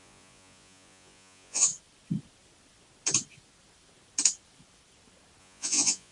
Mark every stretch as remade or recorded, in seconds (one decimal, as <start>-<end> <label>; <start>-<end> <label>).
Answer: 0.0-1.7 remade; 1.7-5.4 recorded; 5.4-6.1 remade